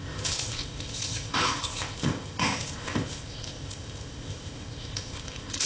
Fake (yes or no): yes